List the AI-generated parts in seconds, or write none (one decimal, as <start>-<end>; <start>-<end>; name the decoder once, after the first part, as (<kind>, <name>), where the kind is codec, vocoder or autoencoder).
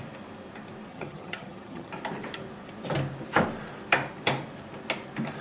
0.9-1.9 (vocoder, HiFi-GAN)